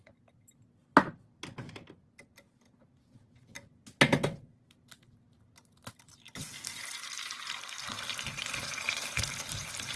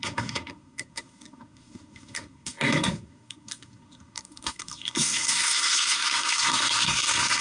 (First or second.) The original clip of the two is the first